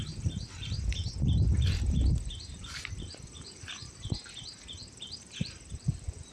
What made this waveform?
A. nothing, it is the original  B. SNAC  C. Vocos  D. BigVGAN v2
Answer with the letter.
D